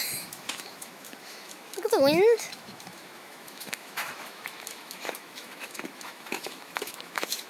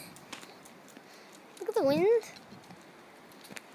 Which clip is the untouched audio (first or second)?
second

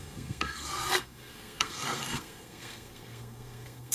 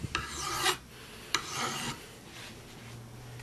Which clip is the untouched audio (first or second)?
second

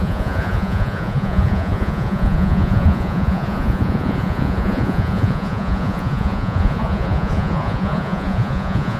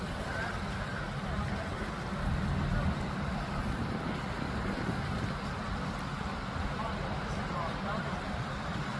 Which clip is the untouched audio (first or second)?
second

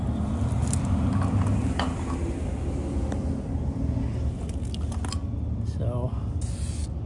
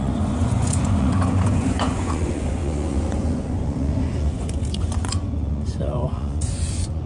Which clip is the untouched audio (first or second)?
first